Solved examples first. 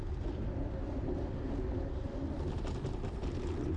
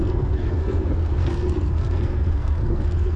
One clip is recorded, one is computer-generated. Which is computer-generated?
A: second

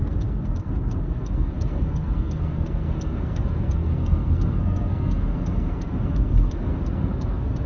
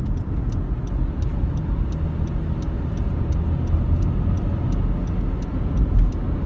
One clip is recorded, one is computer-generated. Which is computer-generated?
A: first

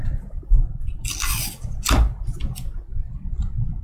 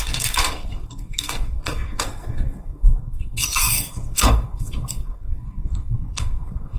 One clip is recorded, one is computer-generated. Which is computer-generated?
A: second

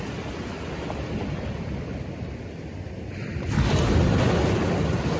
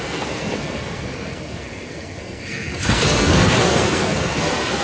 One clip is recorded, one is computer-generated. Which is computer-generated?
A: second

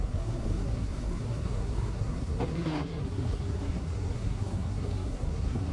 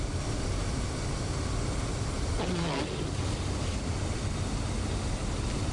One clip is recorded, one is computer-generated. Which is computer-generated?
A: first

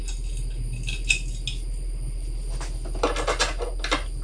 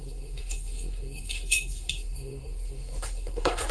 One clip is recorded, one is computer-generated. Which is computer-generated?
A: second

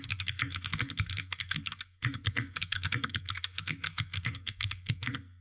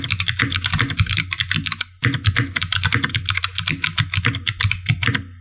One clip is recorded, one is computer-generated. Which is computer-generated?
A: first